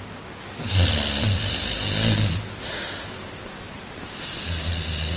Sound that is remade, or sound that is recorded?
recorded